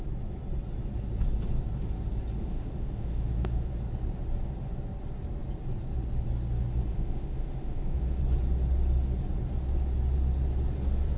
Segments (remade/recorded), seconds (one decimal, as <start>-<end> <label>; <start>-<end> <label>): 0.0-2.4 recorded; 2.4-3.7 remade; 3.7-6.9 recorded; 6.9-8.2 remade; 8.2-11.2 recorded